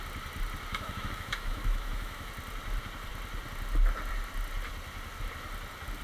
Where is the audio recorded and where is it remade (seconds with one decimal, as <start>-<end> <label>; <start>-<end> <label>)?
0.0-0.7 recorded; 0.7-2.3 remade; 2.3-6.0 recorded